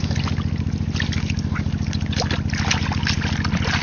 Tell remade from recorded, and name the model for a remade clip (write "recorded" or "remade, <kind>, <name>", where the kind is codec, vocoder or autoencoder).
recorded